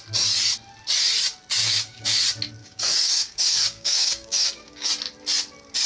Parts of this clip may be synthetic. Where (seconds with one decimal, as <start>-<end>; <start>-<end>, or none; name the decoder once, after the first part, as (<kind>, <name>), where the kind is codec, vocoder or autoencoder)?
1.6-2.2 (codec, DAC); 2.6-4.9